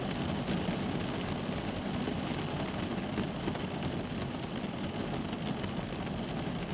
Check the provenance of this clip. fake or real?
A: real